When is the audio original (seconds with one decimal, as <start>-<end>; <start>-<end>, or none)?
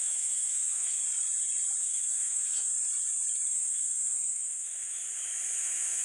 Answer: 1.0-1.8; 2.7-3.5; 5.0-5.6